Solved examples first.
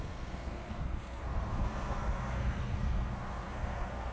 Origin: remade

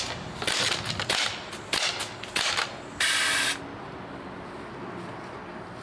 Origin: recorded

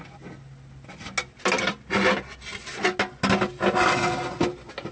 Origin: recorded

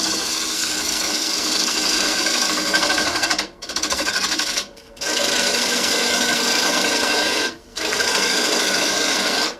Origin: remade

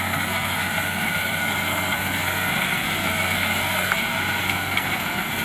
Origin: remade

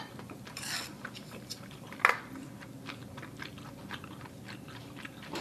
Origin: recorded